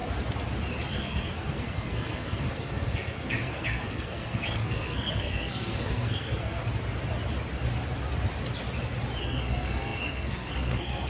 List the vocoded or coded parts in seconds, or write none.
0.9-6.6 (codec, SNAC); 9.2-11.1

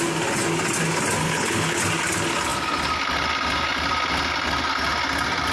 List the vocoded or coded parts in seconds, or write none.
1.2-1.8 (codec, HILCodec)

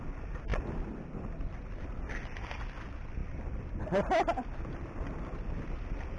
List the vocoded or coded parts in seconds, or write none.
none

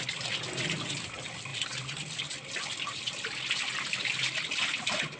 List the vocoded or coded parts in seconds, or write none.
none

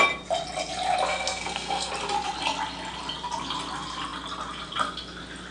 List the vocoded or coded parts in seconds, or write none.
1.1-1.9 (codec, SNAC)

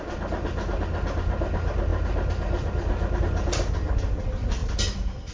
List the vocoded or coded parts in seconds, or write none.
none

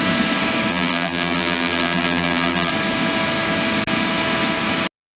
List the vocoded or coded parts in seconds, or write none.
0.7-2.7 (vocoder, BigVGAN v2)